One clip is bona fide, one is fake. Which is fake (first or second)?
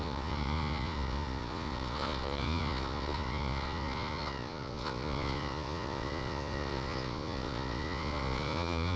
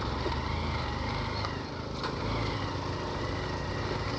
first